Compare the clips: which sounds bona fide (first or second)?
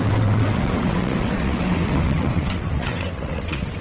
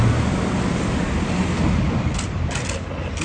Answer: second